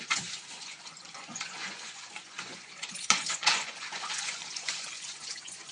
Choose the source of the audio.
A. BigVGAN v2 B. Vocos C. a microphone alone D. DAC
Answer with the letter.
B